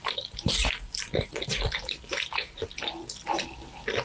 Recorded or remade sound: recorded